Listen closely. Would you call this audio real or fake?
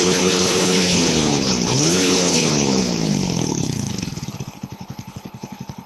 fake